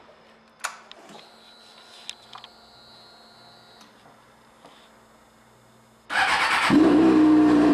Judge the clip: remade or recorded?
recorded